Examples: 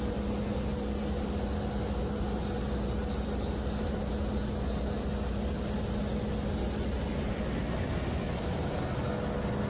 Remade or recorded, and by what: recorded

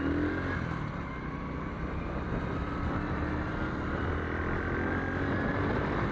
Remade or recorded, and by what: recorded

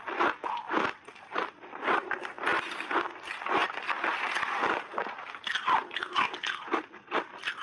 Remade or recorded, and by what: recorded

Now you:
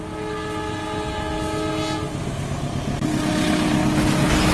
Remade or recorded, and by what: recorded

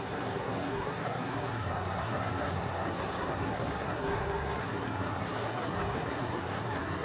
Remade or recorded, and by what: remade, codec, SNAC